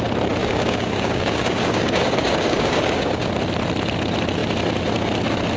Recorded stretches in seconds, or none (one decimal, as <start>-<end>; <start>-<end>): 0.0-0.4; 3.3-5.6

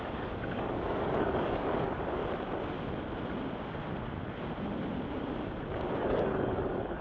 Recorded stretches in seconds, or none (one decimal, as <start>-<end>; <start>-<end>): 2.2-6.0

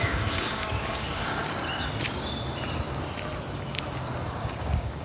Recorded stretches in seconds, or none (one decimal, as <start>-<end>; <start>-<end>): 1.4-4.4

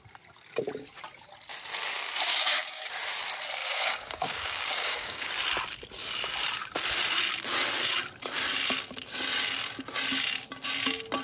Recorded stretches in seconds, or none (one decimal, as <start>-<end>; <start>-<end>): 0.0-2.3; 2.9-3.6; 5.3-11.2

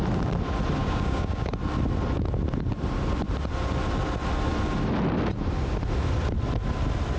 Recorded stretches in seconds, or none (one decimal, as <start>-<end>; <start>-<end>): 0.0-0.8; 1.5-7.2